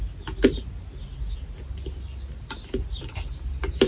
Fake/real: real